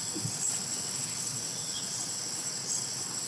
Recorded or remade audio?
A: remade